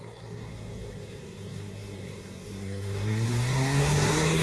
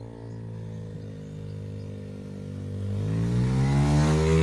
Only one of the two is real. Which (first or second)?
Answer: second